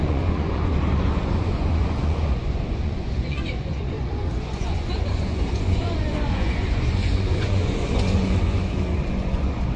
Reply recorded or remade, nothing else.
remade